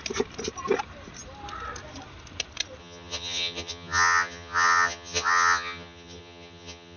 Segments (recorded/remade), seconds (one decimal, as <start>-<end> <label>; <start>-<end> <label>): 0.0-2.8 recorded; 2.8-7.0 remade